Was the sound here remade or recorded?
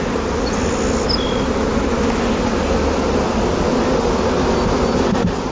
recorded